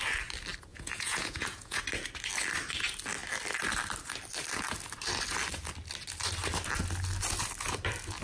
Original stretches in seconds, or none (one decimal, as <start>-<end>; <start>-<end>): 0.0-0.7; 1.8-8.2